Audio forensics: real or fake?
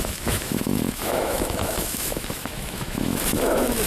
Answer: fake